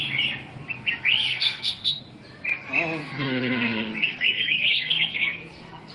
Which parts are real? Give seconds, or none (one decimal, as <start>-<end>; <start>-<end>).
0.0-1.3; 2.0-3.0

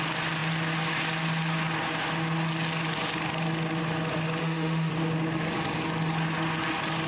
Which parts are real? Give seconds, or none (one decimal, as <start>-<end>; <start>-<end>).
0.0-4.4; 4.9-7.1